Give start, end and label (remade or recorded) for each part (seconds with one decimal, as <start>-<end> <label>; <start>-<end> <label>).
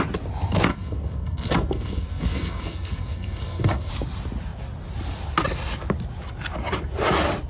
0.0-0.7 recorded; 0.7-3.9 remade; 3.9-7.5 recorded